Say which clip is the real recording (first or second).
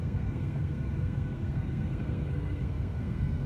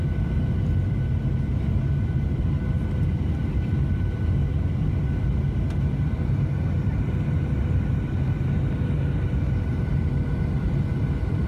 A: second